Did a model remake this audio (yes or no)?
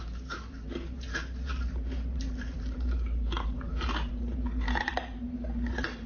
yes